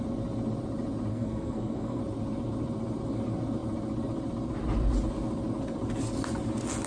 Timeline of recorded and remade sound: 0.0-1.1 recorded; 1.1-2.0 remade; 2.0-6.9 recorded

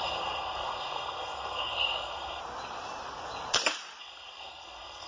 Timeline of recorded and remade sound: 0.0-2.4 remade; 2.4-4.0 recorded; 4.0-5.1 remade

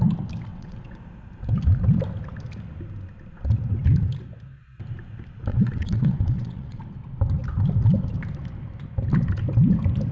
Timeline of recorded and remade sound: 0.0-0.5 recorded; 0.5-1.0 remade; 1.0-5.5 recorded; 5.5-6.8 remade; 6.8-10.1 recorded

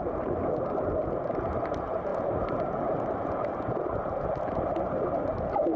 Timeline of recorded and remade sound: 0.0-5.8 recorded

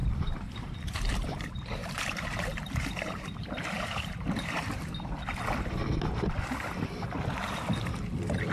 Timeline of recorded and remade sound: 0.0-4.9 remade; 4.9-8.5 recorded